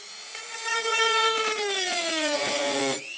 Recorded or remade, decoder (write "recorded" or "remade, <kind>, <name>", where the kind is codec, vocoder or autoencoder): remade, vocoder, Vocos